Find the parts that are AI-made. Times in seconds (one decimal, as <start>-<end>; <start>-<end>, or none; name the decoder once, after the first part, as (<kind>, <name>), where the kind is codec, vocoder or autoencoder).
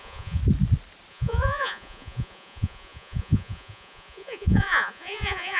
0.0-0.4 (vocoder, Vocos); 1.1-5.6